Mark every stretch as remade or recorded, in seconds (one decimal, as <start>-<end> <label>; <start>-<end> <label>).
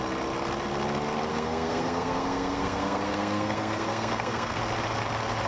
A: 0.0-1.3 recorded; 1.3-4.6 remade; 4.6-5.5 recorded